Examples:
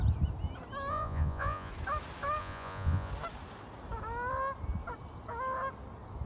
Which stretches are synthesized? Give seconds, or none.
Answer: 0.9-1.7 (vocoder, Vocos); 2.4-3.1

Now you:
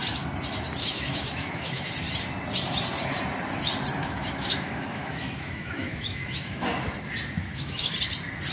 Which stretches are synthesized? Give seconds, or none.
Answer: 0.8-1.9 (autoencoder, DAC-VAE); 4.0-6.8; 7.4-7.9

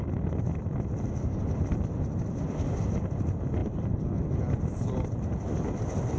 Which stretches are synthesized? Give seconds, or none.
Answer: none

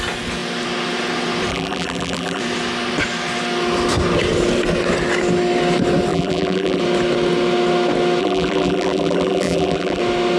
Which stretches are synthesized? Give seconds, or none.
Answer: 1.5-2.4 (vocoder, BigVGAN v2); 6.1-6.8; 8.2-10.0